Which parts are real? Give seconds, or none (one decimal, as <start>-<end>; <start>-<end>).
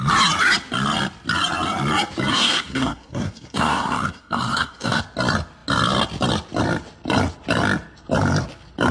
0.0-2.3; 5.0-8.9